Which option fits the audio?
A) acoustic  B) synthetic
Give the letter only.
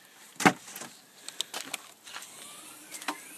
A